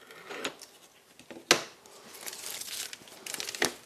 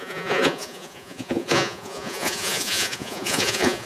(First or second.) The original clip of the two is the first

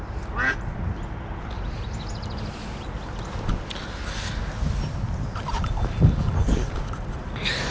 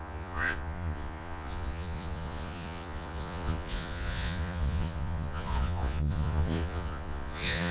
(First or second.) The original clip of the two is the first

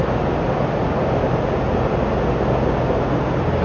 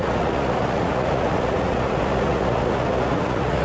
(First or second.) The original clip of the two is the first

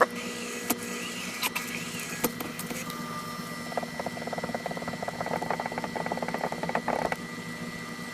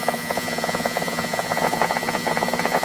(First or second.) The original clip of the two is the first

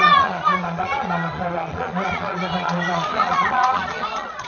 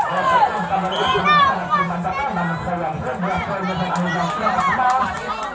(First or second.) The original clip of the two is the second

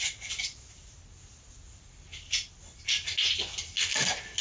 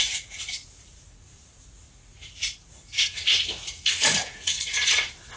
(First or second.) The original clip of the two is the first